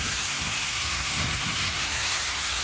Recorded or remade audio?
remade